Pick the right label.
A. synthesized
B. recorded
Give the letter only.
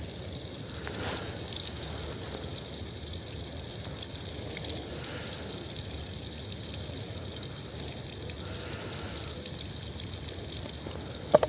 B